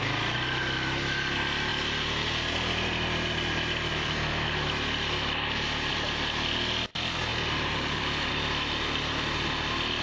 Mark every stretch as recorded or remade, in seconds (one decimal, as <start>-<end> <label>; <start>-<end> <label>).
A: 0.0-10.0 recorded

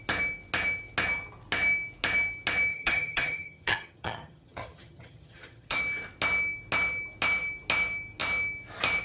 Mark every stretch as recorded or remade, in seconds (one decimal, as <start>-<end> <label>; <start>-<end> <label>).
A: 0.0-2.7 recorded; 2.7-5.8 remade; 5.8-9.0 recorded

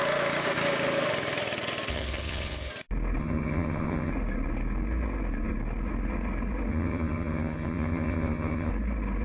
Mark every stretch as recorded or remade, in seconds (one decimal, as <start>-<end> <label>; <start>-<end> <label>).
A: 0.0-1.9 recorded; 1.9-2.7 remade; 2.7-3.2 recorded; 3.2-4.1 remade; 4.1-6.7 recorded; 6.7-8.7 remade; 8.7-9.2 recorded

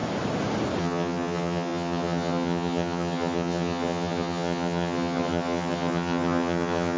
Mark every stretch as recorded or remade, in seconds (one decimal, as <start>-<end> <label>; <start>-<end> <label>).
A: 0.0-0.8 recorded; 0.8-7.0 remade